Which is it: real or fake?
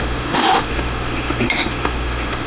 fake